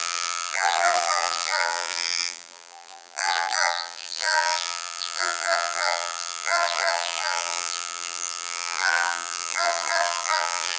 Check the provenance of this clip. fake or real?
fake